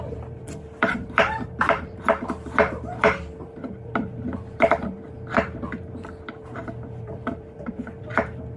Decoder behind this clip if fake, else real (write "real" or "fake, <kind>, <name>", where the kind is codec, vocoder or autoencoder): fake, vocoder, BigVGAN v2